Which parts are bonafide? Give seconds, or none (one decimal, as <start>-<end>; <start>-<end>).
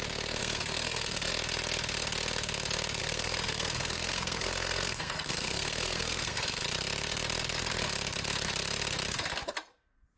0.0-0.4; 1.3-3.0; 6.6-10.2